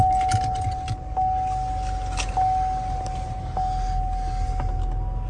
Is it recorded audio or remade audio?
recorded